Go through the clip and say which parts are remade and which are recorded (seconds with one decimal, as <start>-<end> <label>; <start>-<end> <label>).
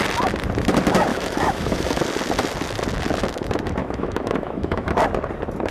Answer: 0.0-1.1 recorded; 1.1-2.0 remade; 2.0-3.8 recorded; 3.8-4.9 remade; 4.9-5.7 recorded